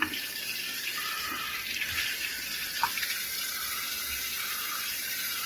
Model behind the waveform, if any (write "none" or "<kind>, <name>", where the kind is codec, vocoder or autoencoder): vocoder, BigVGAN v2